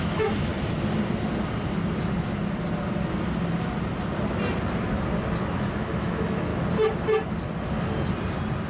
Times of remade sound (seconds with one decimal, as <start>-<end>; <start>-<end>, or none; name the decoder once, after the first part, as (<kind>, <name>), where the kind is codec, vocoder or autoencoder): 0.0-0.5 (autoencoder, DAC-VAE); 5.7-6.5